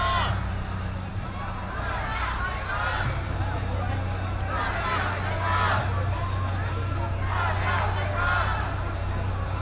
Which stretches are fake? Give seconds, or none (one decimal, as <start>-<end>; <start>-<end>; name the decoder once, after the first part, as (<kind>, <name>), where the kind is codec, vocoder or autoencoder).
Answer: none